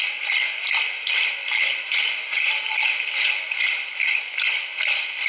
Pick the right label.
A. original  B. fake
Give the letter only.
A